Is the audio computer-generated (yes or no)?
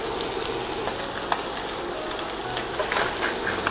no